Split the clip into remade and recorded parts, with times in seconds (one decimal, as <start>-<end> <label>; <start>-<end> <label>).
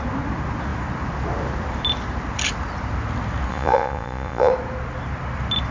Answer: 0.0-3.5 recorded; 3.5-4.5 remade; 4.5-5.7 recorded